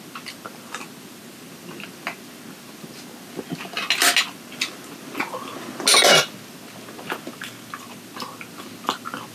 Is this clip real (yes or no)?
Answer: yes